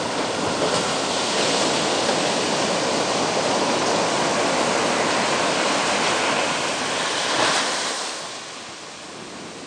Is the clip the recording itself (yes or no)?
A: yes